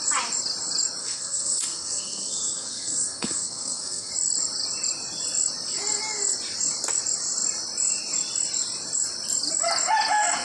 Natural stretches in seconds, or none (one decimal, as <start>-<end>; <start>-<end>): 0.0-1.0; 4.1-10.4